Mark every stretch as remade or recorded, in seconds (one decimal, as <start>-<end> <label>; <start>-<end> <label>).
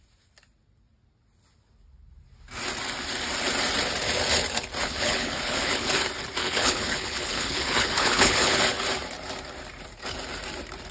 0.0-4.8 recorded; 4.8-5.9 remade; 5.9-6.4 recorded; 6.4-8.6 remade; 8.6-10.9 recorded